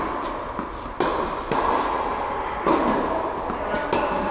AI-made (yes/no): no